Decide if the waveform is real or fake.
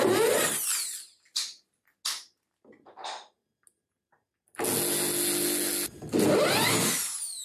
real